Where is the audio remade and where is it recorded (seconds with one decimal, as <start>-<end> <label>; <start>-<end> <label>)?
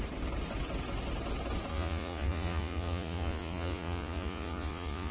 0.0-1.7 recorded; 1.7-5.1 remade